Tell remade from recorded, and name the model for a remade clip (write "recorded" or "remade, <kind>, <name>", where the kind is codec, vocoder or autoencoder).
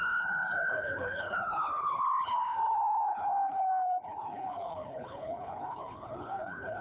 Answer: remade, codec, HILCodec